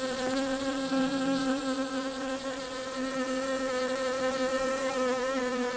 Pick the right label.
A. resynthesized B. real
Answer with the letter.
A